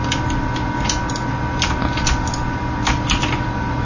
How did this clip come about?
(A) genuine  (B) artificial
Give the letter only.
A